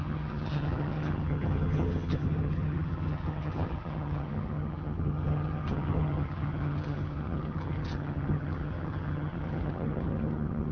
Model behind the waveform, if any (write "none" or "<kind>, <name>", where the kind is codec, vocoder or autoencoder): vocoder, HiFi-GAN